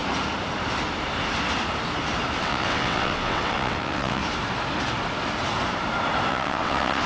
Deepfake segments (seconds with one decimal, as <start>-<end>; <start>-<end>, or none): 2.4-4.2; 6.3-7.1